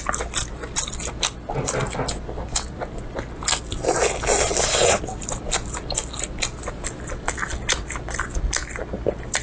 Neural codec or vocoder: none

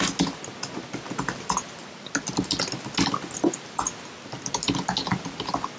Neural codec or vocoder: none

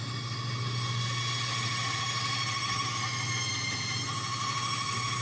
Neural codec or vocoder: none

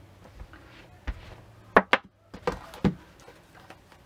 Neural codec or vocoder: none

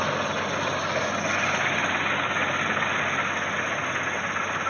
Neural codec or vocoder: none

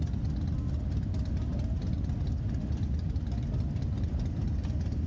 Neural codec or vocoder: none